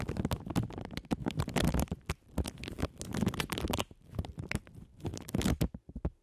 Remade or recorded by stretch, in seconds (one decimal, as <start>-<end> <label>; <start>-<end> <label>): 0.0-1.2 recorded; 1.2-2.8 remade; 2.8-5.1 recorded; 5.1-5.7 remade; 5.7-6.2 recorded